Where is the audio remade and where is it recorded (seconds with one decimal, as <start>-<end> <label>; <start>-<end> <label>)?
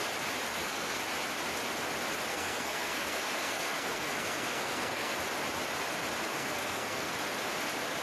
0.0-0.5 recorded; 0.5-1.0 remade; 1.0-2.3 recorded; 2.3-5.2 remade; 5.2-6.3 recorded; 6.3-7.1 remade; 7.1-8.0 recorded